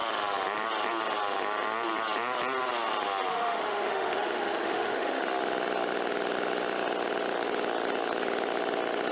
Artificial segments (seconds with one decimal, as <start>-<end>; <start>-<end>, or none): 3.3-5.2